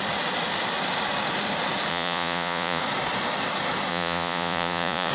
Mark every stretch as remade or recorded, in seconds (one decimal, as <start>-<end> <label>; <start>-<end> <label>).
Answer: 0.0-1.9 recorded; 1.9-2.8 remade; 2.8-3.9 recorded; 3.9-5.1 remade